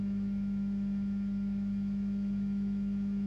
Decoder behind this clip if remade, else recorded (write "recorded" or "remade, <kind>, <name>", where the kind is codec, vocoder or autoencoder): remade, autoencoder, DAC-VAE